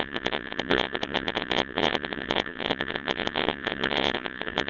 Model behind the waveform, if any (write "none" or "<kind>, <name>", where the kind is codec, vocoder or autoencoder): vocoder, WaveNeXt